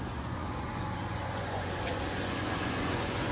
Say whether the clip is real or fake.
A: fake